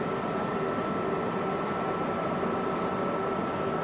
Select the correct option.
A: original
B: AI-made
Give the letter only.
A